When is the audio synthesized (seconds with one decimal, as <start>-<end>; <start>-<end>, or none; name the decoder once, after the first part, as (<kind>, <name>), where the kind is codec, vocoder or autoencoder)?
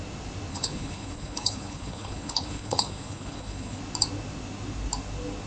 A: 0.5-3.8 (codec, HILCodec)